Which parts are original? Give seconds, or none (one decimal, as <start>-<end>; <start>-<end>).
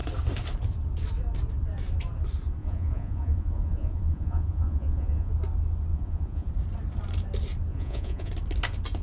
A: 0.0-2.6; 5.3-5.9; 6.5-7.7; 8.3-9.0